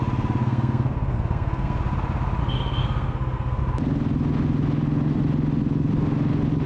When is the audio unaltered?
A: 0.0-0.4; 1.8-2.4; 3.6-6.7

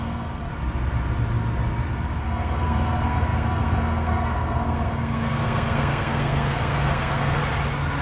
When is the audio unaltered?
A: 0.5-2.2; 7.4-8.0

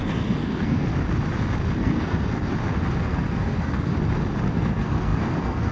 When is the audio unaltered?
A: 0.9-1.8; 2.5-3.0; 3.9-4.5

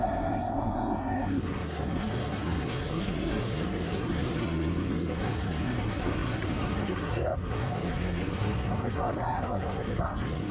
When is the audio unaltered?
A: none

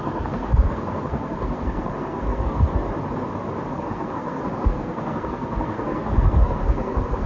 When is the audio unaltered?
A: 2.8-3.7

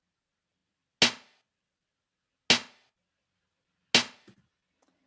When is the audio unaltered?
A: 0.0-5.1